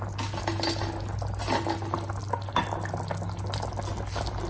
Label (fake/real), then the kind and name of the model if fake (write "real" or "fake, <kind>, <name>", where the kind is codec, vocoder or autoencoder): real